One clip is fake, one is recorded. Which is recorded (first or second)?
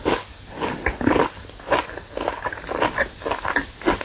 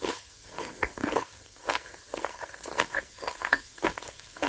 first